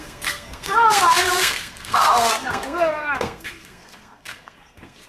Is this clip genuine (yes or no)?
no